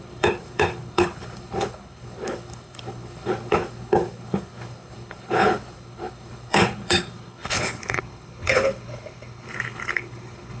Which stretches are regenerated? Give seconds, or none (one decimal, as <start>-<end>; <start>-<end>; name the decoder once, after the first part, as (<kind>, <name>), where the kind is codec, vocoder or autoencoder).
0.0-10.6 (codec, HILCodec)